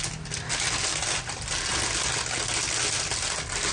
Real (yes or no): yes